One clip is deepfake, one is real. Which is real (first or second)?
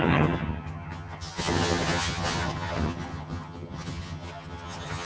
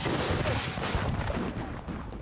second